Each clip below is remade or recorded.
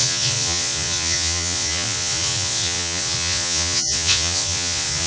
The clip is remade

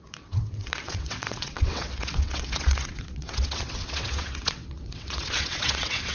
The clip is remade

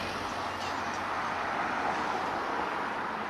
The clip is recorded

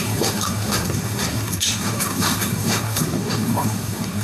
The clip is remade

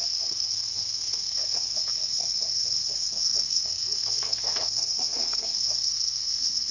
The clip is remade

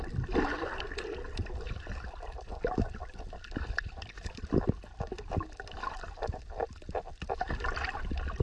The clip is recorded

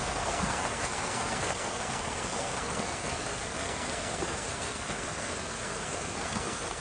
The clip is remade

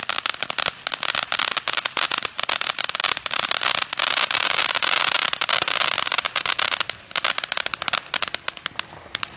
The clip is recorded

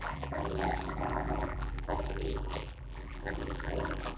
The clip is remade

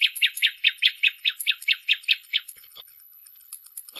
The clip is remade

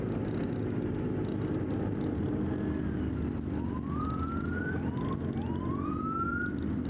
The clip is recorded